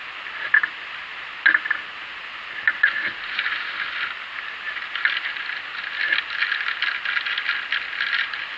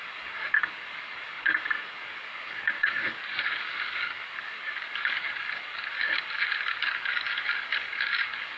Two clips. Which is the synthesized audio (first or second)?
second